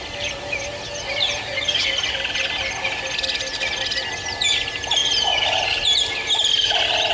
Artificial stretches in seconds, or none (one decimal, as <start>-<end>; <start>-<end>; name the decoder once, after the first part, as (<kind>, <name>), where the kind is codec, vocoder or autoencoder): none